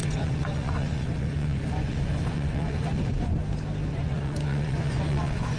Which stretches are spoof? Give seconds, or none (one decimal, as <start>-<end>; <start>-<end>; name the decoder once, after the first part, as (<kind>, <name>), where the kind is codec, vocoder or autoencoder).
0.0-3.4 (vocoder, Vocos); 3.9-5.6